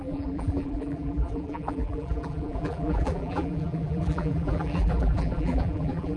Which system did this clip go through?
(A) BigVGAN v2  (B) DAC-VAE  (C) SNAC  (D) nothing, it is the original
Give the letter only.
A